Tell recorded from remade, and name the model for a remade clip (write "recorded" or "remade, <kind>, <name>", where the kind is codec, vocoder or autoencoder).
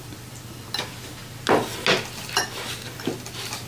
recorded